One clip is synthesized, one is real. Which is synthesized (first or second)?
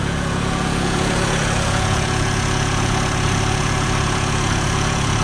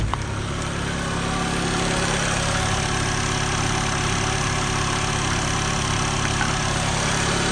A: first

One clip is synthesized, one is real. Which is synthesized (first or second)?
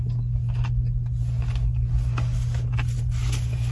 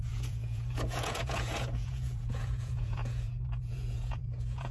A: second